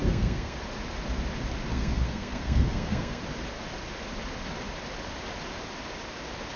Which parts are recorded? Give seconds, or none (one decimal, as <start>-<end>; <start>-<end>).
0.6-1.7; 3.2-6.6